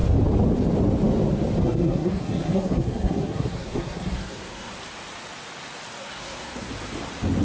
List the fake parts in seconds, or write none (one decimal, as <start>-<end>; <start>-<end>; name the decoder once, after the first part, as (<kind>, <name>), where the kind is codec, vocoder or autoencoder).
1.6-4.7 (codec, SNAC); 6.0-6.7